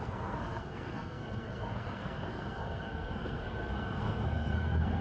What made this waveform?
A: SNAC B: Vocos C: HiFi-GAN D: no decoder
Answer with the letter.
A